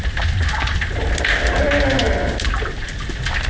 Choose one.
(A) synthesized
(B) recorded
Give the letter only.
B